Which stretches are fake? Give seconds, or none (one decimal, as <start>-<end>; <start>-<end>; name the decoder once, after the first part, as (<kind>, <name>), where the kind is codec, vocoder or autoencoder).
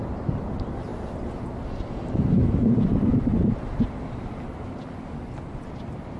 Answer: none